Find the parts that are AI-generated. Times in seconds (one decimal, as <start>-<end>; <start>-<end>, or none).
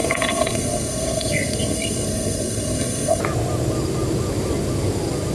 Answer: 0.0-3.2